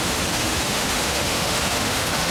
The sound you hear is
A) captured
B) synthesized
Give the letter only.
B